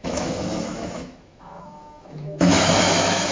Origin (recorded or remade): remade